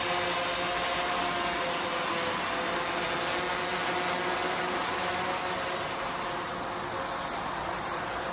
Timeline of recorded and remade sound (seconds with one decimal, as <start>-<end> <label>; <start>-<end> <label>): 0.0-8.3 recorded